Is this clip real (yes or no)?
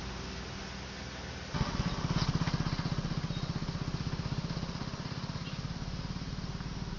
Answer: yes